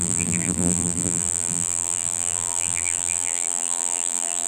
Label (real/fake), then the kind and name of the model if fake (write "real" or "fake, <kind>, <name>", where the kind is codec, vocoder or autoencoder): fake, vocoder, BigVGAN v2